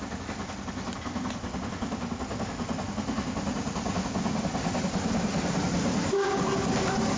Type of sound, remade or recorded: recorded